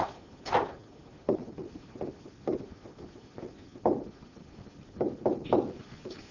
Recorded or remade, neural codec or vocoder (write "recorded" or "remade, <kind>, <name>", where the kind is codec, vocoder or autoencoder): recorded